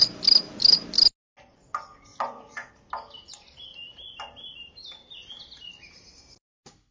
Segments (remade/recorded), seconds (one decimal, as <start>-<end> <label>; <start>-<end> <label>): 0.0-2.1 recorded; 2.1-2.7 remade; 2.7-6.9 recorded